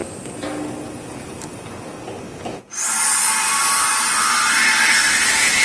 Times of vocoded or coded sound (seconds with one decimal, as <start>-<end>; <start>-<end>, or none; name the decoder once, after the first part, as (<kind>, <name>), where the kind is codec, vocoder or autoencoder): none